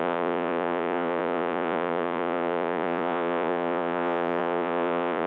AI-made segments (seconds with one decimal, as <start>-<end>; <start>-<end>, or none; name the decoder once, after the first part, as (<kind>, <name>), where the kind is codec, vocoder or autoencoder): 0.0-5.3 (vocoder, Vocos)